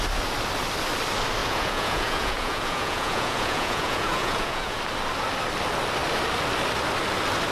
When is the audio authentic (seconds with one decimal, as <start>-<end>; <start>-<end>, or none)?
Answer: 0.0-1.4; 4.8-7.5